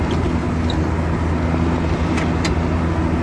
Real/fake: real